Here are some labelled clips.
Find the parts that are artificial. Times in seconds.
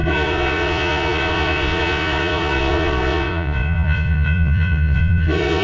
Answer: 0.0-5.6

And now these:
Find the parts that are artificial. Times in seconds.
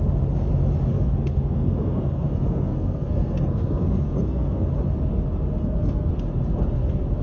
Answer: 0.9-4.7; 5.6-6.1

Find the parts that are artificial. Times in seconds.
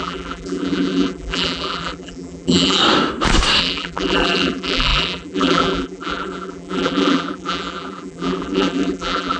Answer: 0.0-2.8; 3.6-9.4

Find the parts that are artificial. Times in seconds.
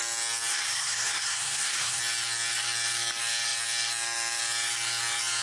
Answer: 0.5-2.0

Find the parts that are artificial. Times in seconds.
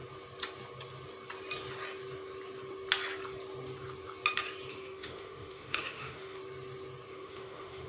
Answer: 4.7-6.4; 7.1-7.9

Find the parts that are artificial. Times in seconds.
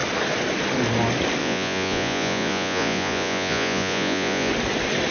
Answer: 1.4-4.5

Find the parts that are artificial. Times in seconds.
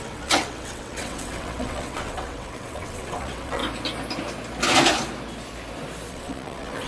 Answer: 0.0-3.6; 6.1-6.9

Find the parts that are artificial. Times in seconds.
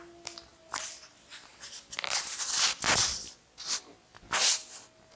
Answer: none